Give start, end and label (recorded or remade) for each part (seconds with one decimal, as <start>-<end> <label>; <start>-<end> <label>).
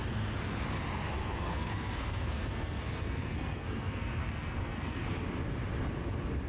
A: 0.0-1.2 recorded; 1.2-5.1 remade; 5.1-6.5 recorded